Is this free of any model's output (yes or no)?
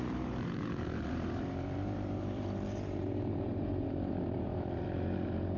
no